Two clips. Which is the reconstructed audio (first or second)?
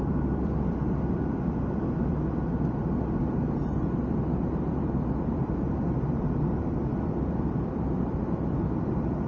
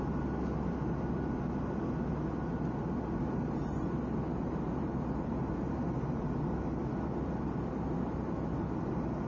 first